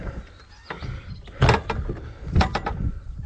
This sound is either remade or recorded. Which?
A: recorded